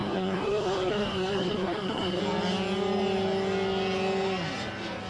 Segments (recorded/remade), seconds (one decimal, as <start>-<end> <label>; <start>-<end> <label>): 0.0-2.2 remade; 2.2-5.1 recorded

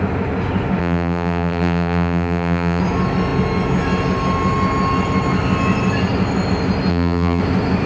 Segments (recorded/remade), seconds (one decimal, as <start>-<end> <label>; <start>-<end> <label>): 0.0-0.8 recorded; 0.8-2.8 remade; 2.8-6.9 recorded; 6.9-7.4 remade; 7.4-7.9 recorded

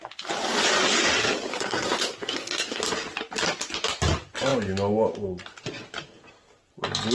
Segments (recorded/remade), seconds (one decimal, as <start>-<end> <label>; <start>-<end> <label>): 0.0-1.5 recorded; 1.5-2.8 remade; 2.8-7.1 recorded

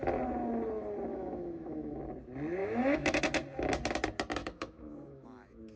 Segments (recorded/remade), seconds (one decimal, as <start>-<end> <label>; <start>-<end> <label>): 0.0-1.1 recorded; 1.1-2.0 remade; 2.0-2.6 recorded; 2.6-3.2 remade; 3.2-4.4 recorded; 4.4-5.8 remade